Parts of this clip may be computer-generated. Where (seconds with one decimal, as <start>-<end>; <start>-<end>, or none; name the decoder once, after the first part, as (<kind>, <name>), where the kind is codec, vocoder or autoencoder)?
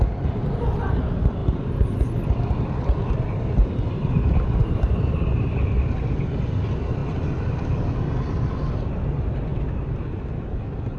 1.4-2.1 (vocoder, BigVGAN v2); 3.0-5.6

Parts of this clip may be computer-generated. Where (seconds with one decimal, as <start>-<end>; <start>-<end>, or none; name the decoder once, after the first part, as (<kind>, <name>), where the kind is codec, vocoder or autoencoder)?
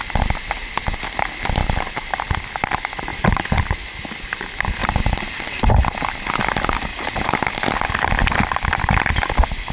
4.8-5.7 (vocoder, BigVGAN v2)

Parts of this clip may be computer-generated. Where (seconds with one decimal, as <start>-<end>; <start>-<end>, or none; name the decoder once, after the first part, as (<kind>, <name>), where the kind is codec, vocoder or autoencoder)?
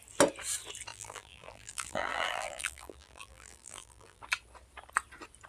0.9-4.2 (vocoder, BigVGAN v2)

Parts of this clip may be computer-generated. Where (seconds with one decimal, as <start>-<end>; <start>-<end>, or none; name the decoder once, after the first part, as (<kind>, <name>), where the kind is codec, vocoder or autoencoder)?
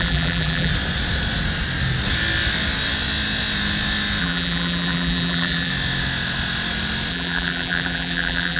0.0-0.7 (vocoder, BigVGAN v2); 4.2-5.7; 7.1-8.6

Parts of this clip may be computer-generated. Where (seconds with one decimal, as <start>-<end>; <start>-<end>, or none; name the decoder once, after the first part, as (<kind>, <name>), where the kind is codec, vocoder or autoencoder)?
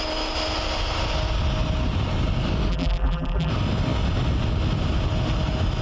2.7-3.5 (vocoder, BigVGAN v2)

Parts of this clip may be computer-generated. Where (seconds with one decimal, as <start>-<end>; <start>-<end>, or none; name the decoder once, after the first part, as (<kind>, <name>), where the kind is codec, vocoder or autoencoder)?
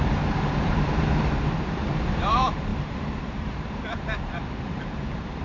0.0-5.4 (vocoder, BigVGAN v2)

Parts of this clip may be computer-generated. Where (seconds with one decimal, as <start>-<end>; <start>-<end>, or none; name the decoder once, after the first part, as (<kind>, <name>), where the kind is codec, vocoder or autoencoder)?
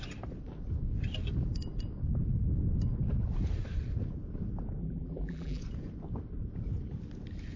4.8-5.6 (vocoder, BigVGAN v2)